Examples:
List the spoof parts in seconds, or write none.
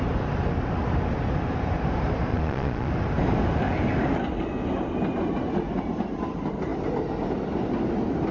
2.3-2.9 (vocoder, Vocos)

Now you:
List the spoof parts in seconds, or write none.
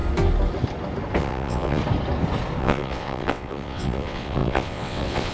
1.2-1.8 (vocoder, WaveNeXt); 2.6-5.3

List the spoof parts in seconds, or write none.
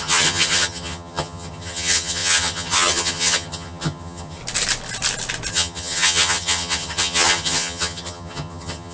0.0-4.4 (vocoder, HiFi-GAN); 5.5-8.9